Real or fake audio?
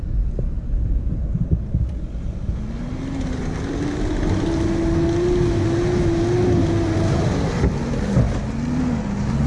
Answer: real